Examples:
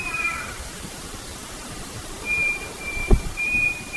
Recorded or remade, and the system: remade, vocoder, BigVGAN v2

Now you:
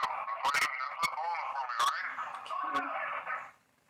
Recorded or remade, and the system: remade, vocoder, BigVGAN v2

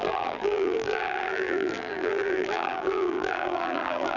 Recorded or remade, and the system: remade, vocoder, BigVGAN v2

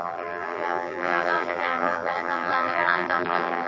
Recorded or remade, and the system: remade, vocoder, BigVGAN v2